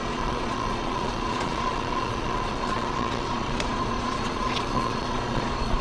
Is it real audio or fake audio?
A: fake